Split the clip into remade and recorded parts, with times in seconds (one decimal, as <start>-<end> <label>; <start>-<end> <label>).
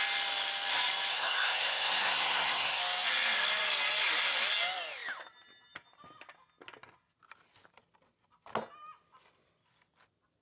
0.0-1.1 recorded; 1.1-2.8 remade; 2.8-10.4 recorded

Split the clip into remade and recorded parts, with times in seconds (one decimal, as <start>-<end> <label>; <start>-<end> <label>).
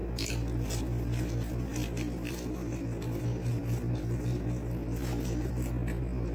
0.0-6.3 recorded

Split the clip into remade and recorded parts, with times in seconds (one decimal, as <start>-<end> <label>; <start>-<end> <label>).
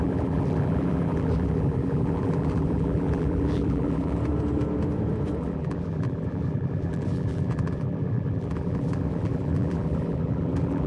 0.0-4.2 remade; 4.2-5.4 recorded; 5.4-10.9 remade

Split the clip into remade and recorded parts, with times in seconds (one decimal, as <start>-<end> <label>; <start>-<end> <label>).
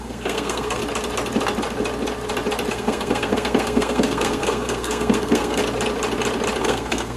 0.0-0.8 remade; 0.8-2.7 recorded; 2.7-5.6 remade; 5.6-6.6 recorded; 6.6-7.2 remade